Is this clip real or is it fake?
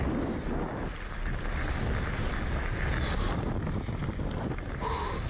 real